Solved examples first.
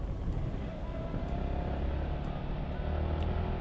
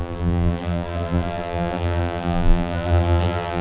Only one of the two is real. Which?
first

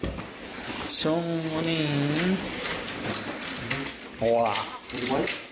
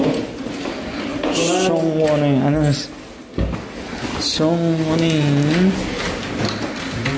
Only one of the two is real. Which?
second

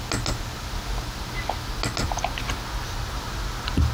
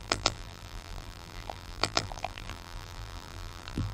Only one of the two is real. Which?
first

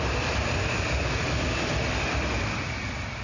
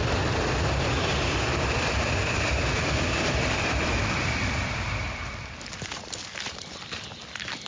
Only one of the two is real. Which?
first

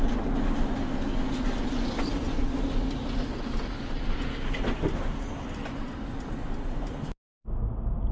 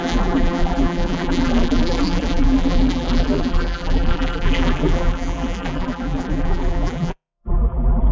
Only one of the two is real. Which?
first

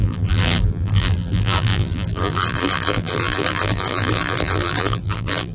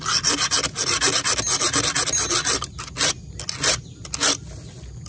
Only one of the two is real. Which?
second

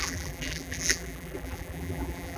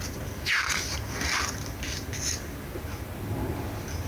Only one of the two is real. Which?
second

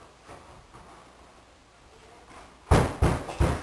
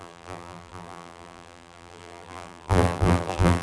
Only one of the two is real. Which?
first